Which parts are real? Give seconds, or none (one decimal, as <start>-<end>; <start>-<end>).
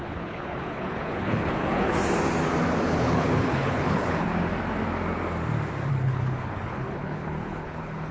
2.0-2.8; 4.3-5.9